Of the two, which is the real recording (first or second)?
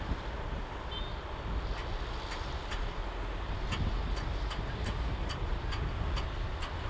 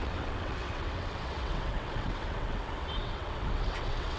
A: first